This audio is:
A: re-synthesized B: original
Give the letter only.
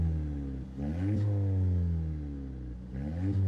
B